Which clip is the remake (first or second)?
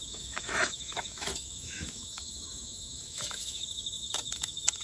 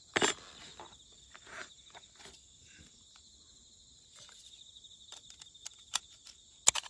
first